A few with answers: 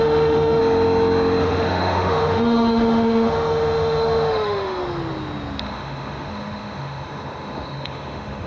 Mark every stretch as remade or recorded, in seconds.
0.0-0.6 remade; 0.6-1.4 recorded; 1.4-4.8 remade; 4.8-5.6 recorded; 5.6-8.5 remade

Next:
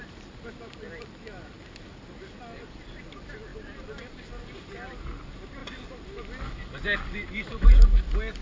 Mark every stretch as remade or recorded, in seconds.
0.0-8.4 recorded